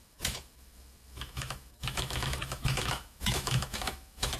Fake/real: fake